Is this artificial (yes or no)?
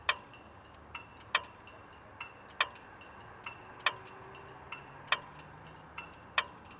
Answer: no